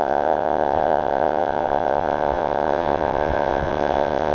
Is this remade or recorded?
remade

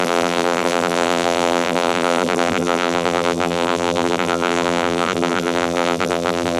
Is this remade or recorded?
remade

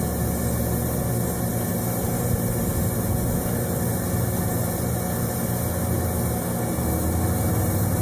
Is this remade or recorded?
recorded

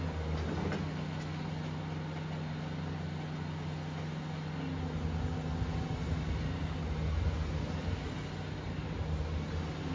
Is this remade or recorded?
recorded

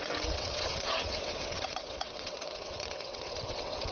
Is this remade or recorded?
remade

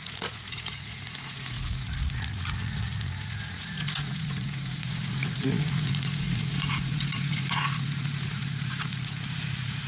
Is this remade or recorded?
remade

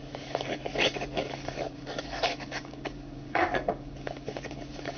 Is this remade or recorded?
remade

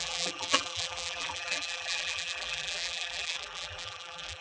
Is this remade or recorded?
remade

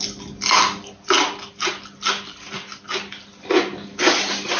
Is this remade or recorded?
recorded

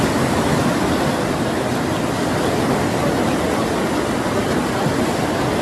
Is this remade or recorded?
recorded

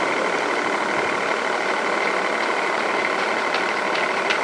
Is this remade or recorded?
recorded